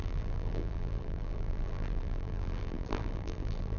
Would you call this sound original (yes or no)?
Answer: no